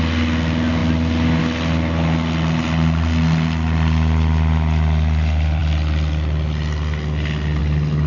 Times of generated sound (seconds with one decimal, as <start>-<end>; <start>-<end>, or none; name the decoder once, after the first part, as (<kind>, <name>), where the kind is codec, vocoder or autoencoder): none